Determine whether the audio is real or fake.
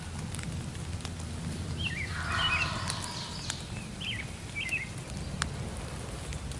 real